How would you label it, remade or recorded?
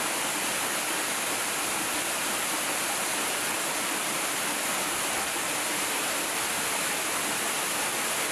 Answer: recorded